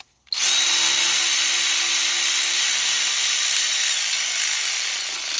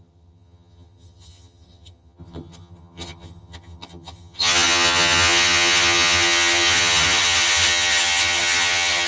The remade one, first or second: second